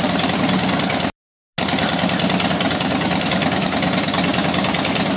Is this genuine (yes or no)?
yes